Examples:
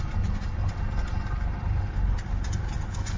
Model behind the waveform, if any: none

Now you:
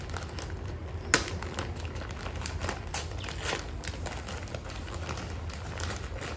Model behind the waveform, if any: none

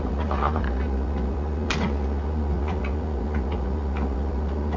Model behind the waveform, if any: vocoder, Vocos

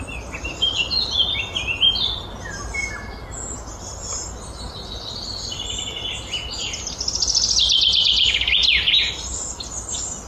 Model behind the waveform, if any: none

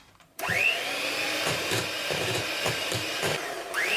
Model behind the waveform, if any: vocoder, BigVGAN v2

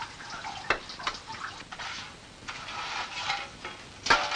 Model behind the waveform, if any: none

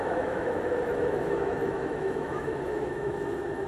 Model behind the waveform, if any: autoencoder, DAC-VAE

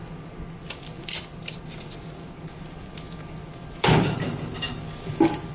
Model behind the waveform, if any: none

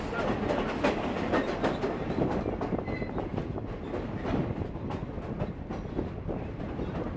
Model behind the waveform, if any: none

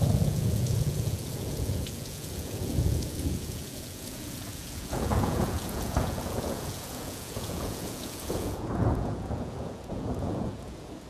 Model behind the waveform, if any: vocoder, Vocos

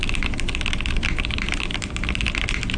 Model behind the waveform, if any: none